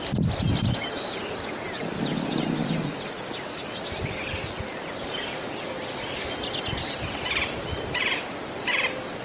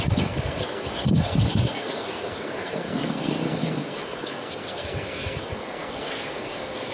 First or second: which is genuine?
first